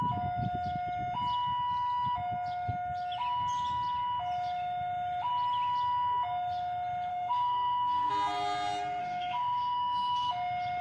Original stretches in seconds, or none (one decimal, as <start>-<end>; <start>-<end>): 0.0-7.1; 8.1-9.0; 10.3-10.8

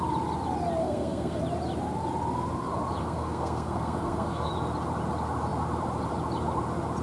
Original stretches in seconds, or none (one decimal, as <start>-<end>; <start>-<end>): 0.0-0.8; 1.4-3.0; 4.5-7.0